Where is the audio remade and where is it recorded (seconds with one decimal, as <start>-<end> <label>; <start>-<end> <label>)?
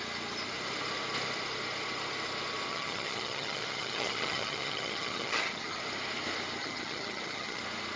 0.0-2.7 recorded; 2.7-5.8 remade; 5.8-6.6 recorded; 6.6-7.6 remade; 7.6-8.0 recorded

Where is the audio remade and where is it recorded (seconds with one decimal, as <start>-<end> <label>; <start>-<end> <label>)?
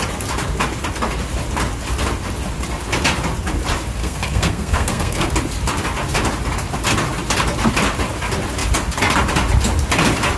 0.0-4.0 recorded; 4.0-5.3 remade; 5.3-10.4 recorded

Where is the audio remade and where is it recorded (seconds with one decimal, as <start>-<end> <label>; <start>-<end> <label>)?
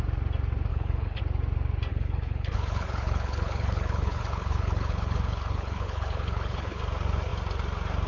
0.0-0.7 recorded; 0.7-1.2 remade; 1.2-1.9 recorded; 1.9-6.8 remade; 6.8-8.1 recorded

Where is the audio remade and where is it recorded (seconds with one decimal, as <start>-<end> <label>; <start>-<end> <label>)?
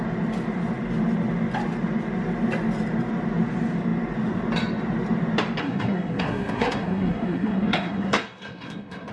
0.0-5.6 recorded; 5.6-9.1 remade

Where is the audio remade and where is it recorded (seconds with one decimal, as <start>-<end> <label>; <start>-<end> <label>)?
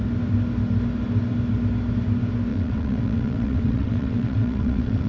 0.0-2.5 recorded; 2.5-5.1 remade